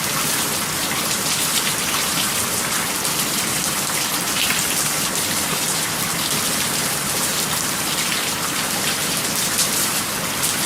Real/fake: real